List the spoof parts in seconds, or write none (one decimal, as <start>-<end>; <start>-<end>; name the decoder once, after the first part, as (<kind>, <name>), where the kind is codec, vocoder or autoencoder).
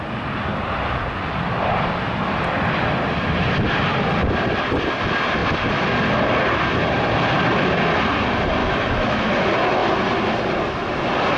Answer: 8.6-9.3 (autoencoder, DAC-VAE)